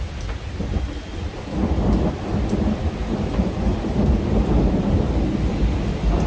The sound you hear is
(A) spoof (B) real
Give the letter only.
B